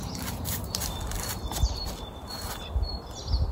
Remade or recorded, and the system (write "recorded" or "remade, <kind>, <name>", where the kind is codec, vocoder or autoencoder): recorded